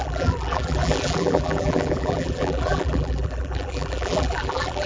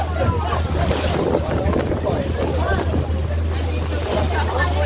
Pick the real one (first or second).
second